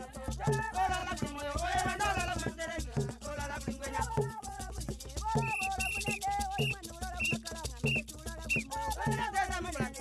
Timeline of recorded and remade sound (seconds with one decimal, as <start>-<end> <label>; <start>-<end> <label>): 0.0-1.0 recorded; 1.0-5.0 remade; 5.0-10.0 recorded